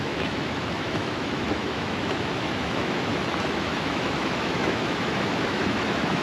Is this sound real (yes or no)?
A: no